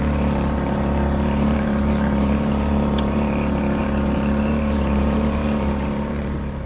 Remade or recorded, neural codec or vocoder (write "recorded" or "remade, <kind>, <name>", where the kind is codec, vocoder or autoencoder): remade, vocoder, BigVGAN v2